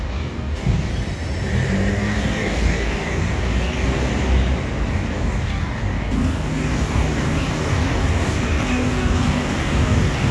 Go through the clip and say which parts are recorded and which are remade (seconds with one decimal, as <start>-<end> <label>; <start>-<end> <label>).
0.0-0.9 remade; 0.9-1.9 recorded; 1.9-4.1 remade; 4.1-4.9 recorded; 4.9-10.3 remade